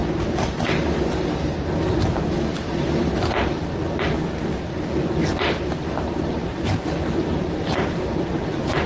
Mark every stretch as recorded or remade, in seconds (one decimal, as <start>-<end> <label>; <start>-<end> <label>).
0.0-8.9 recorded

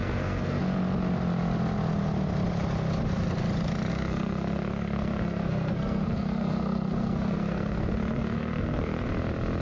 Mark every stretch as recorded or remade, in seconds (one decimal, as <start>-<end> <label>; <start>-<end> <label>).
0.0-0.6 remade; 0.6-3.9 recorded; 3.9-9.1 remade; 9.1-9.6 recorded

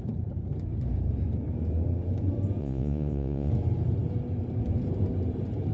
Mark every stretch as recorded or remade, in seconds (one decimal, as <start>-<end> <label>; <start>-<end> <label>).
0.0-2.6 recorded; 2.6-3.5 remade; 3.5-5.7 recorded

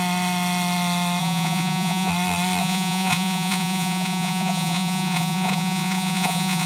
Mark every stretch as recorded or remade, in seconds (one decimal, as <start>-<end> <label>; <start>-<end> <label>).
0.0-1.2 recorded; 1.2-2.1 remade; 2.1-2.6 recorded; 2.6-6.7 remade

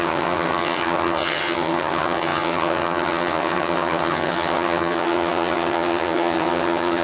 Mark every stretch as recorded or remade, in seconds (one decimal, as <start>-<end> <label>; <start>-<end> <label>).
0.0-7.0 remade

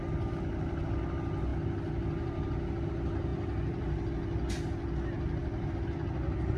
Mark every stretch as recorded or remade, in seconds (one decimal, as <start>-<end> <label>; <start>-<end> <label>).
0.0-6.6 recorded

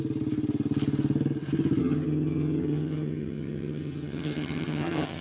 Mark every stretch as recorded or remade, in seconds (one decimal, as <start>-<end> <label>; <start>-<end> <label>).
0.0-1.8 recorded; 1.8-5.2 remade

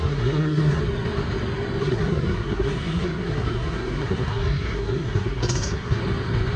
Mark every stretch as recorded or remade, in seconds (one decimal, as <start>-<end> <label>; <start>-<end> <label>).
0.0-0.8 remade; 0.8-1.8 recorded; 1.8-6.0 remade; 6.0-6.6 recorded